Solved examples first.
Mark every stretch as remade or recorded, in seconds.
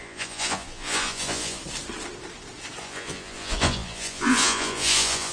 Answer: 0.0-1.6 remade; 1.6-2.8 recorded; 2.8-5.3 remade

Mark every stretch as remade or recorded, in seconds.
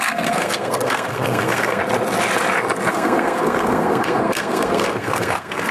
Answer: 0.0-1.8 remade; 1.8-2.9 recorded; 2.9-5.7 remade